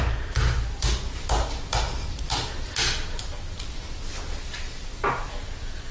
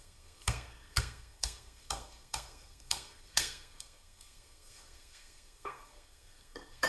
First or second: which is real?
first